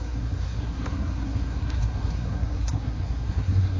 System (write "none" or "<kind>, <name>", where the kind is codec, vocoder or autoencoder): codec, SNAC